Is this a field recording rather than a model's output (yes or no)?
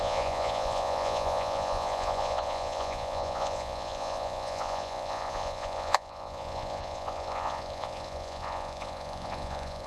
no